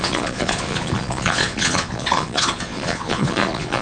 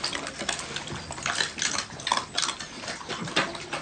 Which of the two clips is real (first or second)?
second